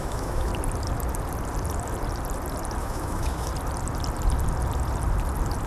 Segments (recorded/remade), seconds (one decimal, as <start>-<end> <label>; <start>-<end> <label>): 0.0-0.5 remade; 0.5-2.8 recorded; 2.8-3.5 remade; 3.5-5.7 recorded